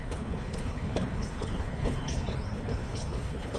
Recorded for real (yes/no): no